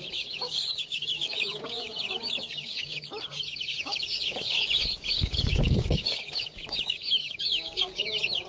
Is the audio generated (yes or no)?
yes